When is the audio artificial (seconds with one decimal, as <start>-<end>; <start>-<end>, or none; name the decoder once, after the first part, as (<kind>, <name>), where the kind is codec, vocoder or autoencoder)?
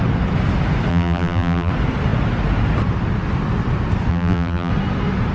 0.9-1.7 (vocoder, BigVGAN v2); 4.1-4.7